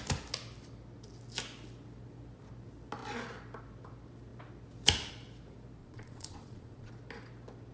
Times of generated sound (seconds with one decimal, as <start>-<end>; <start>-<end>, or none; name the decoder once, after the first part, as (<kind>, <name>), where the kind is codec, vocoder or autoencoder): 5.8-6.9 (vocoder, Vocos)